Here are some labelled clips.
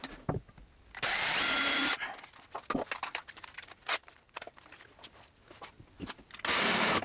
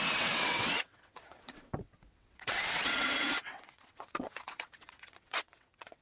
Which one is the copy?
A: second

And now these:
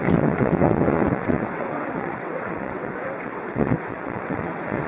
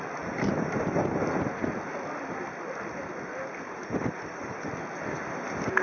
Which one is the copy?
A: first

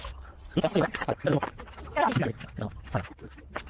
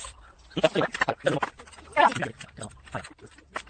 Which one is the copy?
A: first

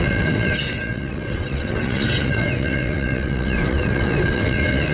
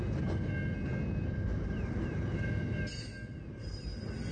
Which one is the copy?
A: first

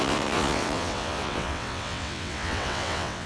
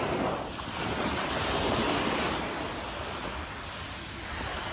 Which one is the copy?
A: first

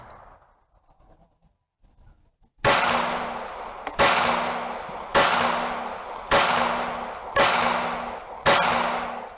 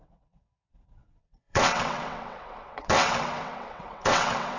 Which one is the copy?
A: second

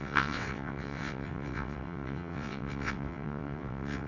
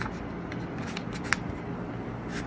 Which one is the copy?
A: first